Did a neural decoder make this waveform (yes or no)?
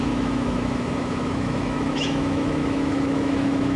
yes